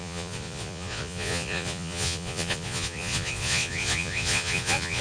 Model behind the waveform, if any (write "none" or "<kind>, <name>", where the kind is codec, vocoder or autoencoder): vocoder, Vocos